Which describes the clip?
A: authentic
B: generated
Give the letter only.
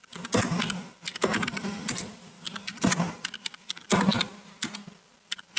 A